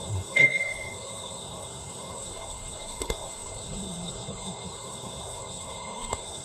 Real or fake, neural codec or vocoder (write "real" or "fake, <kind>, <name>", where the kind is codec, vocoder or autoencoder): fake, codec, SNAC